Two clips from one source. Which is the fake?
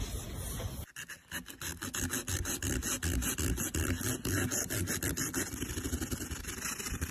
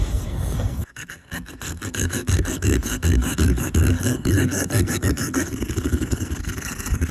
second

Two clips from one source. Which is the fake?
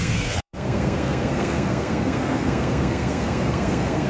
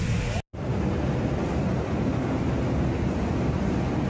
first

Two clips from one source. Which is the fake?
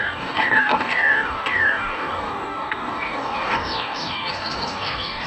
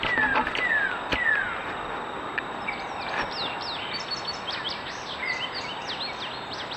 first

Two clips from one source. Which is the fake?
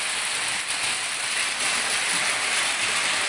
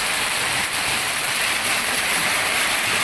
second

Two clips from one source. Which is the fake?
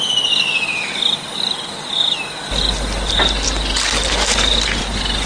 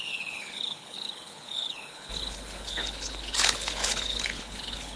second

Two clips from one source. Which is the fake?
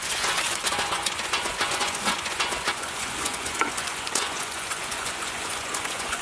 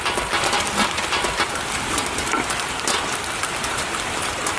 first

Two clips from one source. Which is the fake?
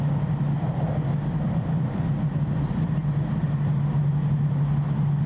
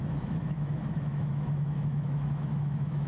second